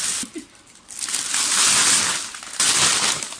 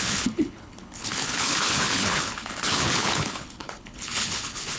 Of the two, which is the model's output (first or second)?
second